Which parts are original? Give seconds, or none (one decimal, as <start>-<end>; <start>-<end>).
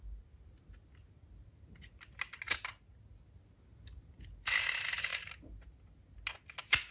0.0-6.9